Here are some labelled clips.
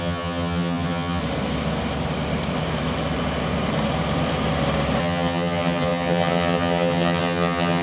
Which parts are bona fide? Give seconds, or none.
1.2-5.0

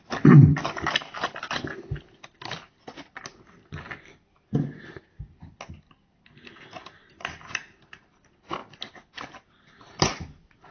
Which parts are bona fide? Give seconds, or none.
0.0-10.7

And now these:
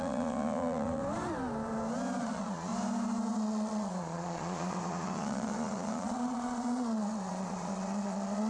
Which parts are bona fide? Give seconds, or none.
1.0-2.2; 2.7-3.4

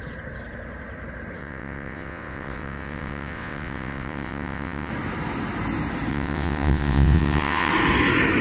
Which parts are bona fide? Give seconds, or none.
0.0-1.4; 4.9-6.1; 7.7-8.4

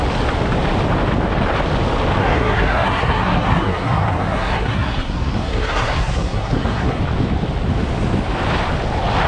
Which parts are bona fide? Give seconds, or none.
0.0-2.2; 7.0-9.3

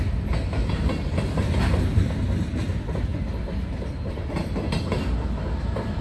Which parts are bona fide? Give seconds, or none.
0.0-6.0